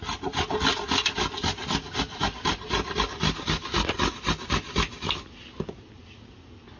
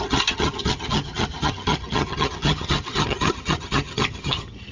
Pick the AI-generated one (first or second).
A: second